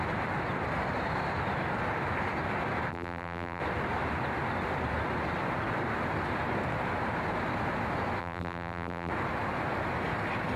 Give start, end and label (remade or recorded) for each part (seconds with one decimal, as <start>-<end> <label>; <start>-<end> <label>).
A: 0.0-2.9 recorded; 2.9-3.6 remade; 3.6-8.2 recorded; 8.2-9.1 remade; 9.1-10.6 recorded

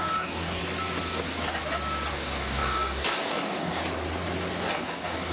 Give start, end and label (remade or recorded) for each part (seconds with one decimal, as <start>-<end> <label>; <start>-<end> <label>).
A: 0.0-0.6 remade; 0.6-2.1 recorded; 2.1-3.8 remade; 3.8-4.5 recorded; 4.5-5.3 remade

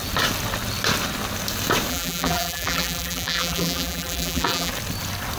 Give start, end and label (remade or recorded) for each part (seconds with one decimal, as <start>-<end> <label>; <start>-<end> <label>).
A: 0.0-1.9 recorded; 1.9-4.7 remade; 4.7-5.4 recorded